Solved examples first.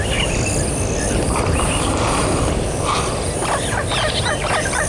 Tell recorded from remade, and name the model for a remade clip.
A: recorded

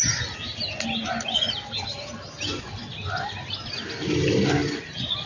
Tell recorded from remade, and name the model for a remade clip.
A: recorded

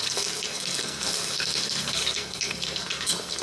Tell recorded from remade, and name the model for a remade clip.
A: remade, codec, SNAC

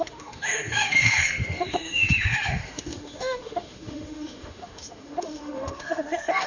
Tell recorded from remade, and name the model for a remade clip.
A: remade, autoencoder, DAC-VAE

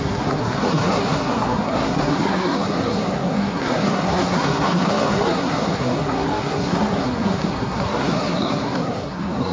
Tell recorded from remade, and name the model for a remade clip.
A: remade, codec, SNAC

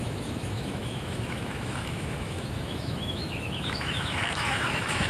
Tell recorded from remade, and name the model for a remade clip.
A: remade, autoencoder, DAC-VAE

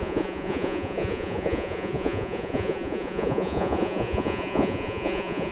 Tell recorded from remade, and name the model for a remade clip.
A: remade, vocoder, Vocos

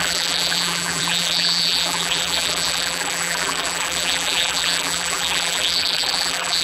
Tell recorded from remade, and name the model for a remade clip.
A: remade, vocoder, BigVGAN v2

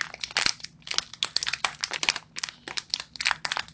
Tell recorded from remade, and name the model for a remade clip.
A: recorded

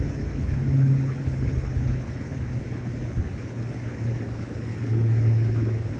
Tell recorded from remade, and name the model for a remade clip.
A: remade, codec, HILCodec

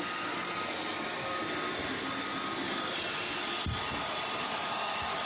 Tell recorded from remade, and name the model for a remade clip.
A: recorded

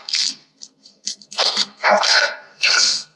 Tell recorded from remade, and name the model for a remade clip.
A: remade, codec, SNAC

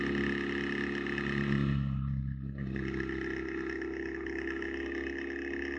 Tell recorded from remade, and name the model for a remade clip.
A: recorded